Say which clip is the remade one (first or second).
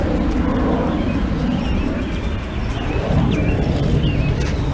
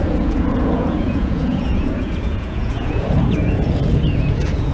second